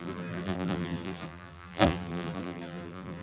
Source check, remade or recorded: remade